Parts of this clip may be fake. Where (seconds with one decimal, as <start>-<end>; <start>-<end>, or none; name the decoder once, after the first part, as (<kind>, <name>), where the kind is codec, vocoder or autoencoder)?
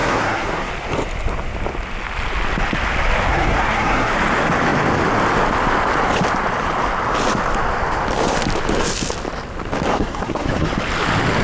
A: 0.0-0.7 (codec, SNAC); 3.3-4.1; 10.0-10.7